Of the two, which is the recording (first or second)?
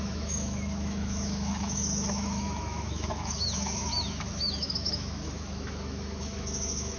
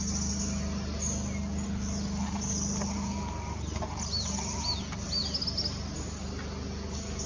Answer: second